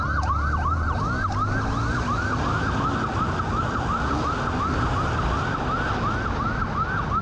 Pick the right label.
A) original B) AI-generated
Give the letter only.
A